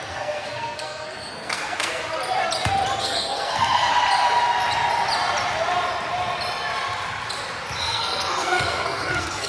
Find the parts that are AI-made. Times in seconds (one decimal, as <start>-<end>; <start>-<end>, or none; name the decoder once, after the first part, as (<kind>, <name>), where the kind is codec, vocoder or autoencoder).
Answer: 0.0-2.0 (codec, SNAC); 3.0-3.9; 7.8-9.5